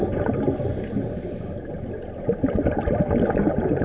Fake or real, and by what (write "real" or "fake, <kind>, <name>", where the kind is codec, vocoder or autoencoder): real